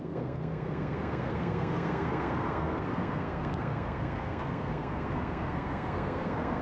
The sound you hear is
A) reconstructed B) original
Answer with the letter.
A